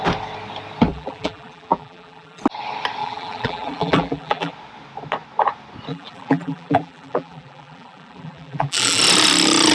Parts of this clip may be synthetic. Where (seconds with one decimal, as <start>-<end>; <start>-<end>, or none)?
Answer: 0.9-2.4; 3.0-4.5; 5.9-9.0